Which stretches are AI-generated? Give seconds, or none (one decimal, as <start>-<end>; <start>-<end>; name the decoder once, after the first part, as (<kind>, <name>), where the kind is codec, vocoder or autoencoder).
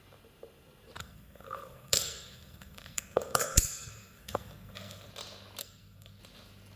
1.0-5.1 (codec, SNAC); 5.6-6.2